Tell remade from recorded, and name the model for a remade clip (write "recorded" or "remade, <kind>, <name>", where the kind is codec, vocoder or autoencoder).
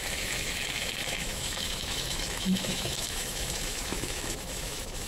remade, autoencoder, DAC-VAE